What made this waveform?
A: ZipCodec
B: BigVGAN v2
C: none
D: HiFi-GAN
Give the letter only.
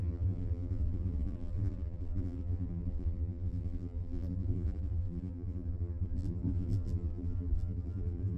B